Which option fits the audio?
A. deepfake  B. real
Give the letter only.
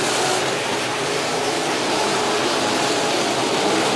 A